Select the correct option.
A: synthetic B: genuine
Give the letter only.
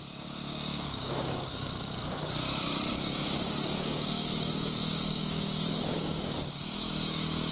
A